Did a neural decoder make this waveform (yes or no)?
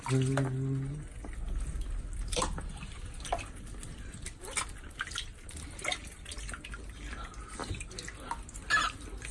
no